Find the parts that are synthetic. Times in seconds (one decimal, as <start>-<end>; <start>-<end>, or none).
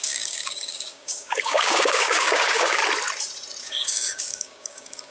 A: 0.0-2.8; 3.6-5.1